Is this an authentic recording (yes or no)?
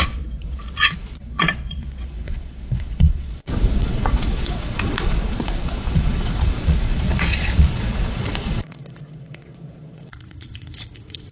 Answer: no